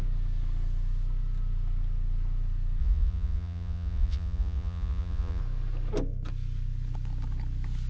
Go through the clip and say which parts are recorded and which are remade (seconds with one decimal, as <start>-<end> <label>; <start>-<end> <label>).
0.0-2.8 recorded; 2.8-5.4 remade; 5.4-7.9 recorded